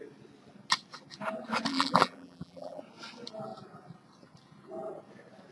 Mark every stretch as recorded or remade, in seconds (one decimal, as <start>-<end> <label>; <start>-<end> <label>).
0.0-1.7 recorded; 1.7-2.8 remade; 2.8-5.5 recorded